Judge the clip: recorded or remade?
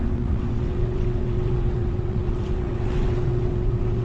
remade